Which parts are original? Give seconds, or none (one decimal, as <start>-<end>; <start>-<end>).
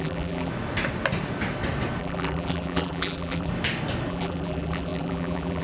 0.5-2.0; 3.5-4.1